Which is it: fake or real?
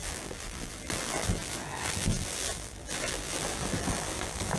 fake